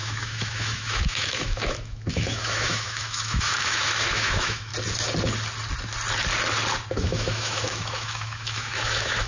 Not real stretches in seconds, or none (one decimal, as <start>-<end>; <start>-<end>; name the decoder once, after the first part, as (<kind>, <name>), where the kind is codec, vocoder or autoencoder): 0.0-4.7 (autoencoder, DAC-VAE); 6.9-9.3